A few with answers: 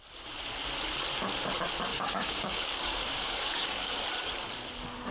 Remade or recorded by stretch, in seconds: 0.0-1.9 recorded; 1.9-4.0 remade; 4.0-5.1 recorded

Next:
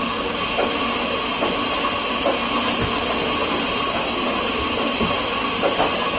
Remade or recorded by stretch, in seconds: 0.0-6.2 recorded

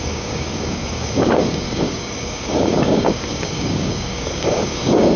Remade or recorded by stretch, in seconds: 0.0-5.2 remade

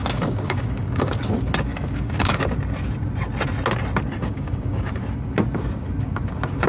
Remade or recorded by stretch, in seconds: 0.0-1.2 remade; 1.2-1.7 recorded; 1.7-2.4 remade; 2.4-4.2 recorded; 4.2-4.9 remade; 4.9-6.7 recorded

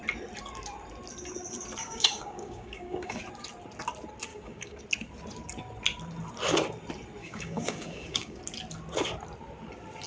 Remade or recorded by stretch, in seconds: 0.0-1.8 recorded; 1.8-3.2 remade; 3.2-4.3 recorded; 4.3-4.8 remade; 4.8-7.2 recorded; 7.2-8.4 remade; 8.4-10.1 recorded

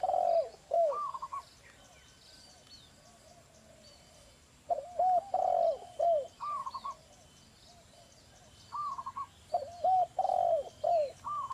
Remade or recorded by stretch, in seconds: 0.0-0.5 recorded; 0.5-1.1 remade; 1.1-11.5 recorded